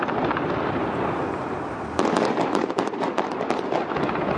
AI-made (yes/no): no